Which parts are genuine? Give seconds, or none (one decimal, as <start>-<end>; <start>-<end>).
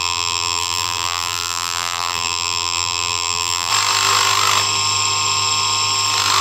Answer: 3.7-6.4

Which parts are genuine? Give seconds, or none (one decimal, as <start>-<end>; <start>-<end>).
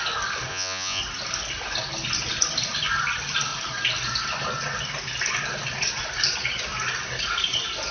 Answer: 0.0-0.5; 1.0-7.9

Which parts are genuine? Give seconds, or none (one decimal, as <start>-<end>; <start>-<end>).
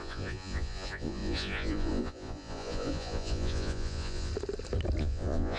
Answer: 4.3-5.0